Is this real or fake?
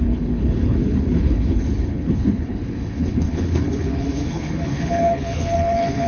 fake